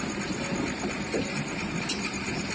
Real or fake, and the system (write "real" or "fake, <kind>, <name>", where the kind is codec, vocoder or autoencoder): real